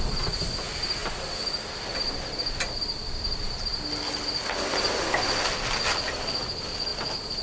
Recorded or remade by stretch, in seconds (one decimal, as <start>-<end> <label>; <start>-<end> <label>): 0.0-7.4 recorded